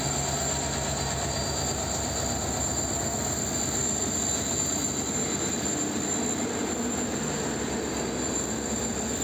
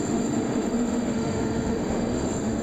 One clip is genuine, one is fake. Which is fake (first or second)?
second